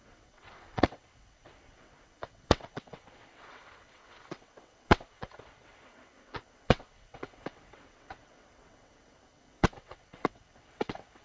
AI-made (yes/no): yes